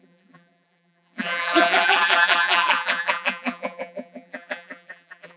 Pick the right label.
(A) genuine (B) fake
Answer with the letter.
B